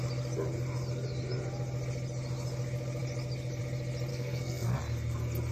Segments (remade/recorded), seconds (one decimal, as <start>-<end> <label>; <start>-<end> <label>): 0.0-4.1 recorded; 4.1-4.8 remade; 4.8-5.5 recorded